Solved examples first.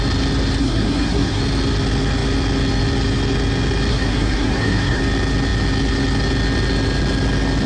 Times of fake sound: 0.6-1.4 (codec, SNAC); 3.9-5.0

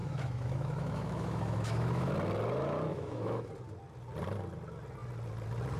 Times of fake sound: 0.0-2.1 (autoencoder, DAC-VAE); 2.9-3.5

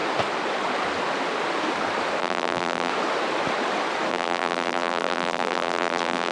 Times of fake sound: 2.2-2.9 (vocoder, BigVGAN v2); 4.1-6.3

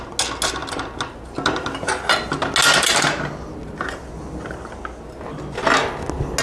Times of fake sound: none

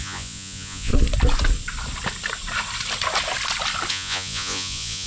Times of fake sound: 0.0-0.9 (vocoder, Vocos); 3.9-5.1

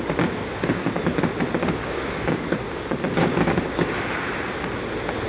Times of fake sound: 0.4-1.2 (codec, DAC); 1.8-3.9

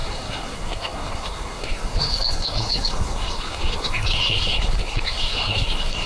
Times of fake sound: 0.0-6.1 (codec, SNAC)